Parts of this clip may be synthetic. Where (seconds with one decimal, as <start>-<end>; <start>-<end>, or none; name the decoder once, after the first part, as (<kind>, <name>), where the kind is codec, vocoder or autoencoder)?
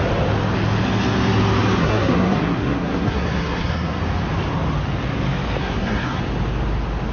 1.8-4.0 (codec, SNAC); 5.6-6.2